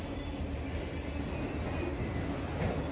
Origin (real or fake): real